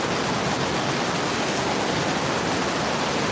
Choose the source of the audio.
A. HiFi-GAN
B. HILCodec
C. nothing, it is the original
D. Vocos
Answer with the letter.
C